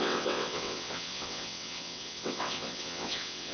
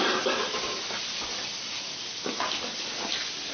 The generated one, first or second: first